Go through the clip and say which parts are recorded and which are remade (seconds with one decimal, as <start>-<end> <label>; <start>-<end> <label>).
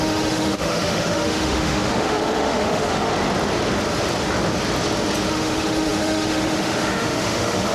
0.0-3.1 remade; 3.1-5.3 recorded; 5.3-7.7 remade